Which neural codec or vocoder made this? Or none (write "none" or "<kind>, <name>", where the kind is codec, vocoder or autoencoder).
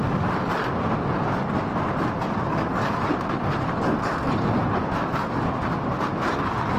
vocoder, BigVGAN v2